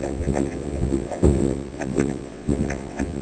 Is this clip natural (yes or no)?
no